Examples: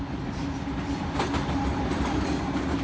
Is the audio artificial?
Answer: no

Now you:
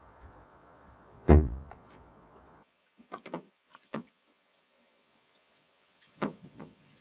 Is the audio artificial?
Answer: yes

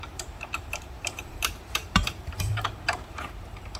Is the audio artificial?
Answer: yes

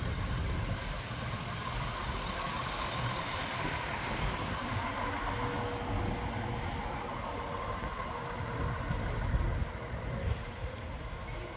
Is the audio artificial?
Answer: no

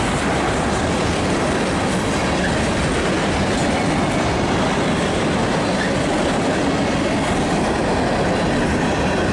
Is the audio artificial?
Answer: no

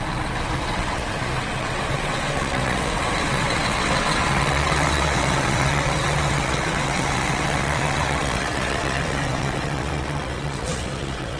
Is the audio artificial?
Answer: yes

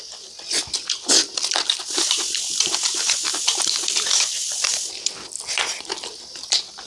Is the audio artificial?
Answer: no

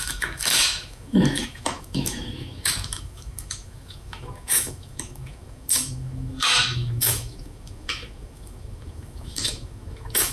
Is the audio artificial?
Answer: yes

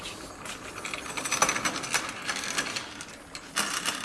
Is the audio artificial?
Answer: no